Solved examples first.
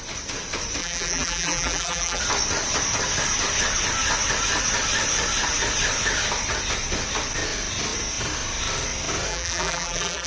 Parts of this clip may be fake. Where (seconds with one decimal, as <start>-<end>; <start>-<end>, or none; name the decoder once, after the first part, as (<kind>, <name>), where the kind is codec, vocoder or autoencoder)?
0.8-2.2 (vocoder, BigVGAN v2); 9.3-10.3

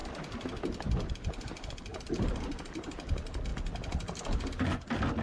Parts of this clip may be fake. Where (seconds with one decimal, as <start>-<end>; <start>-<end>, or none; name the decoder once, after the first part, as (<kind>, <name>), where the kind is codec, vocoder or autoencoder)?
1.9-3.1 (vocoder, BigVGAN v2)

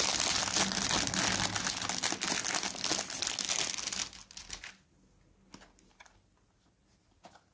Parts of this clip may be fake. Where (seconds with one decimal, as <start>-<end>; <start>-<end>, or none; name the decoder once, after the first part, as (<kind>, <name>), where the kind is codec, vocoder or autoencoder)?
none

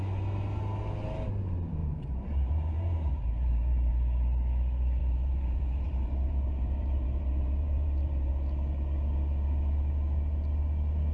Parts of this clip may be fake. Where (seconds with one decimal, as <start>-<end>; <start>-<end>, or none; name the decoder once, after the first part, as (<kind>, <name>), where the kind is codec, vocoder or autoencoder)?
1.8-3.9 (vocoder, BigVGAN v2); 5.0-8.3

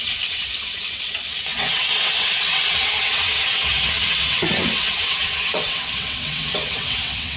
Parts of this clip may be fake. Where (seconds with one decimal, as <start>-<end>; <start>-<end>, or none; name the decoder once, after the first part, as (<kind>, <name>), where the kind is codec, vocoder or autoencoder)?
0.0-7.4 (vocoder, WaveNeXt)